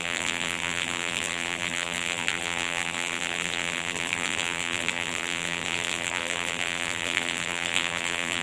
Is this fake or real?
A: fake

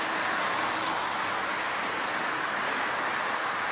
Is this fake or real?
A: real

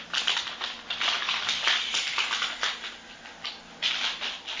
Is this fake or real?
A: real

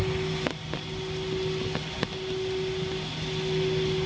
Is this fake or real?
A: real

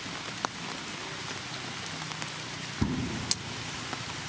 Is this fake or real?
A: real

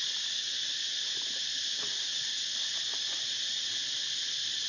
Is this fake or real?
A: real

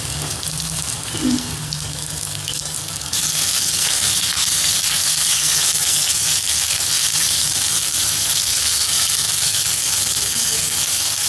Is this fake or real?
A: fake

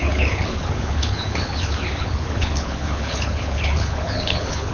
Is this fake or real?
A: fake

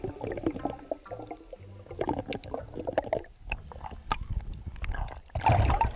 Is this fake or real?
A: real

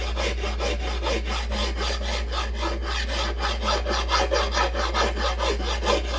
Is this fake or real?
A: real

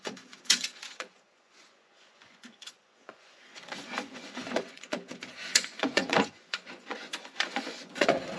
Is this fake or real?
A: fake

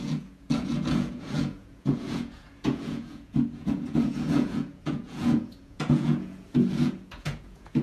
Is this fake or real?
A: fake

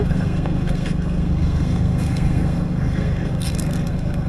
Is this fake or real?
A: fake